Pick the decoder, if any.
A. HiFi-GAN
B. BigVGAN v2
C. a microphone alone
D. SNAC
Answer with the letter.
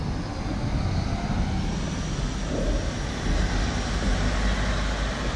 C